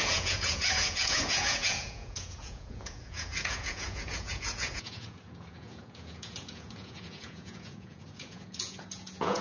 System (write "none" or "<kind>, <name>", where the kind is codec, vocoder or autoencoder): vocoder, Vocos